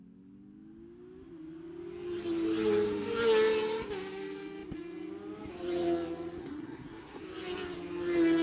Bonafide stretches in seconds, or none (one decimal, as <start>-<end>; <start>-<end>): 0.0-6.4; 7.2-8.4